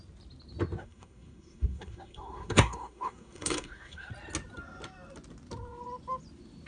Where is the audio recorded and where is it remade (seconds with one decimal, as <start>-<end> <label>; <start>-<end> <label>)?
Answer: 0.0-0.8 recorded; 0.8-4.1 remade; 4.1-6.7 recorded

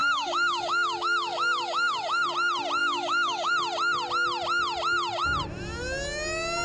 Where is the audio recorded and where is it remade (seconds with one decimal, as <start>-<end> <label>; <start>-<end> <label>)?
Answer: 0.0-2.2 remade; 2.2-2.8 recorded; 2.8-3.5 remade; 3.5-6.6 recorded

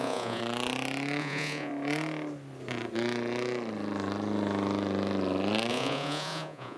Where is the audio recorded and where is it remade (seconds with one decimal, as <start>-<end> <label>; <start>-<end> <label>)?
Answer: 0.0-0.4 remade; 0.4-1.2 recorded; 1.2-1.7 remade; 1.7-5.7 recorded; 5.7-6.8 remade

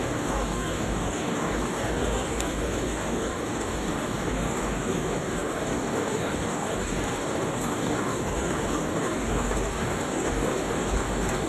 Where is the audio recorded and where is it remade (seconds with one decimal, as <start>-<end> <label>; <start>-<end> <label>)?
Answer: 0.0-11.5 remade

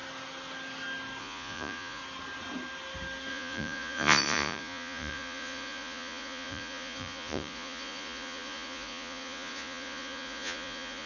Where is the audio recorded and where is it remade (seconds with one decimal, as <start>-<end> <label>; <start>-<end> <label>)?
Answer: 0.0-1.2 recorded; 1.2-2.0 remade; 2.0-3.3 recorded; 3.3-11.1 remade

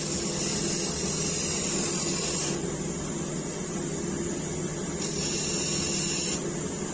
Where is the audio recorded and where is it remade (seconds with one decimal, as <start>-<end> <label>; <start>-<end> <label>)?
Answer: 0.0-6.9 recorded

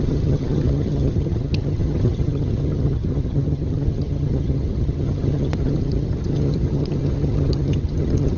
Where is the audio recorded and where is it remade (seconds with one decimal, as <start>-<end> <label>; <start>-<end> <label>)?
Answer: 0.0-8.4 remade